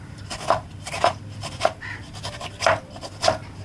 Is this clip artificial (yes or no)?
no